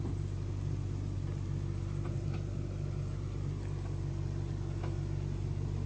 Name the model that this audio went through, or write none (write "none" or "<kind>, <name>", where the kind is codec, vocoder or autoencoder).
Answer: none